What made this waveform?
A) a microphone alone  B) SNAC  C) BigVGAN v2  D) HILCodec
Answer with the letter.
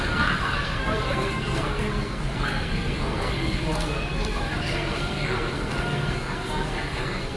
B